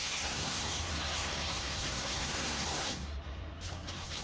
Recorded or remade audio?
remade